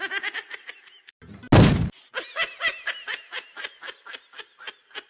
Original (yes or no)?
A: yes